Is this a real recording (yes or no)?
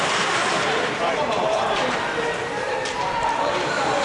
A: yes